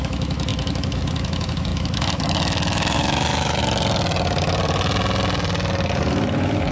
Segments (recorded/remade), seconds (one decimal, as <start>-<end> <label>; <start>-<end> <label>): 0.0-3.6 remade; 3.6-6.1 recorded; 6.1-6.7 remade